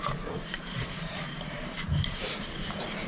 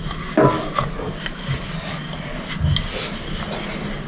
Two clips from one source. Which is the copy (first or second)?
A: first